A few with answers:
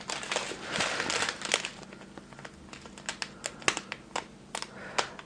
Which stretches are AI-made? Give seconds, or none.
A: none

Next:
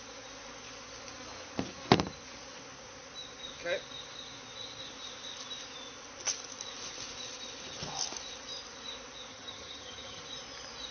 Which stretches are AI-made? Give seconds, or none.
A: 9.3-10.2 (vocoder, HiFi-GAN)

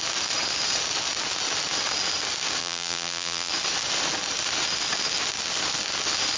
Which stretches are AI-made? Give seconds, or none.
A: 2.6-3.5 (vocoder, BigVGAN v2)

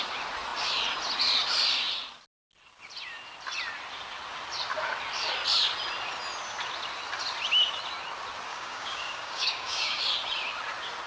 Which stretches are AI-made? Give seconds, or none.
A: 8.5-10.0 (codec, DAC)

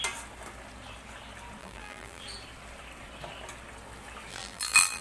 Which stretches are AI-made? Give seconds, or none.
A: 1.6-2.2 (vocoder, BigVGAN v2); 4.3-5.0

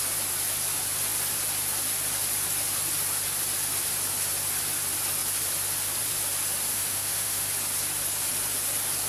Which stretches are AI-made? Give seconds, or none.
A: 6.7-7.5 (autoencoder, DAC-VAE)

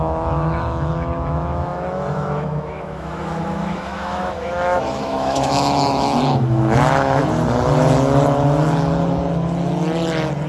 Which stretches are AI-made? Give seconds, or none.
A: 0.0-7.2 (autoencoder, DAC-VAE)